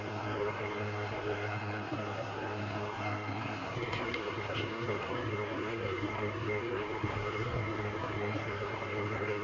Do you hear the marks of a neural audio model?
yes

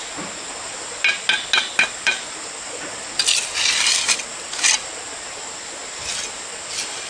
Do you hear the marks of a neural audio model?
no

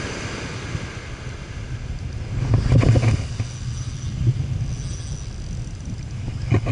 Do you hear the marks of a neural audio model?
no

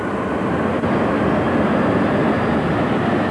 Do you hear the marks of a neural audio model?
no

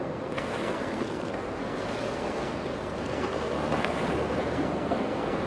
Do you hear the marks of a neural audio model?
yes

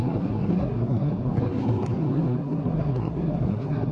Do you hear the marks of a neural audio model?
yes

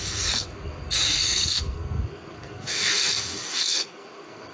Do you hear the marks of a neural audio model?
yes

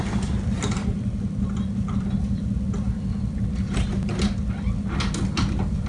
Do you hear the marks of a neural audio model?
no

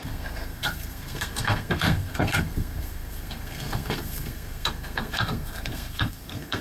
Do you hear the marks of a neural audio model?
yes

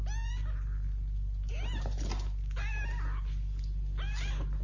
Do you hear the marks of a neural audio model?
no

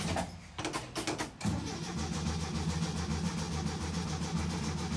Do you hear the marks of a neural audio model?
no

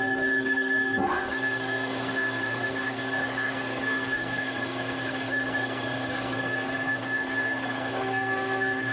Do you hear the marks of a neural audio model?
yes